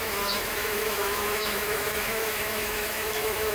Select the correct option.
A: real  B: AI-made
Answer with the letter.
B